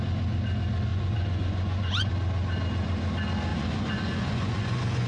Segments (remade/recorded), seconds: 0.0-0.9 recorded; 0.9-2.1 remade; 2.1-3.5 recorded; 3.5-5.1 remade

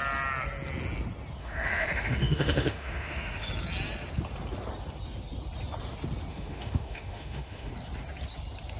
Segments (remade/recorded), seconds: 0.0-1.4 recorded; 1.4-3.5 remade; 3.5-6.3 recorded; 6.3-7.7 remade; 7.7-8.8 recorded